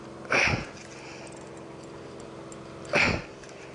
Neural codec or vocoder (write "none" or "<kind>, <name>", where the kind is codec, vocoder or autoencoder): none